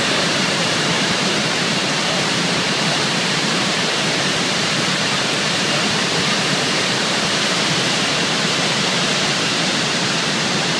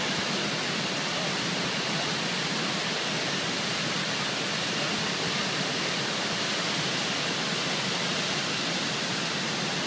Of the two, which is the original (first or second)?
second